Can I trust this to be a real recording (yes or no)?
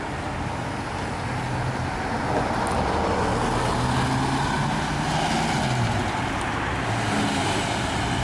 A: yes